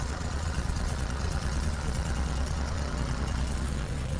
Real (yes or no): no